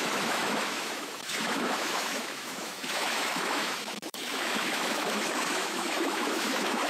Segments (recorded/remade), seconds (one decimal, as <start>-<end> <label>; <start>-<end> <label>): 0.0-6.9 remade